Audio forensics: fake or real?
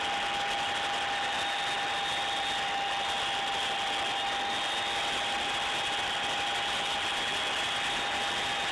real